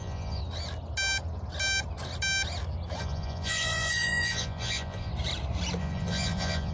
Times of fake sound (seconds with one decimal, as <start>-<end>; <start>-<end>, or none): 0.0-0.4; 3.0-5.1; 5.8-6.7